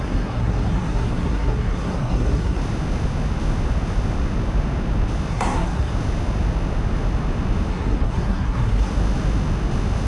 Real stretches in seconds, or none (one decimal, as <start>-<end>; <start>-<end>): 2.6-5.3; 5.9-7.7; 8.9-10.1